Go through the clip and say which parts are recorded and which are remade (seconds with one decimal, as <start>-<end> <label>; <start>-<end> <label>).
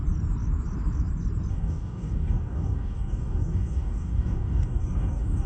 0.0-1.5 recorded; 1.5-5.5 remade